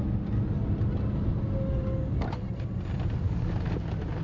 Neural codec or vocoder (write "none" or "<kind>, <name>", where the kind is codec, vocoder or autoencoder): none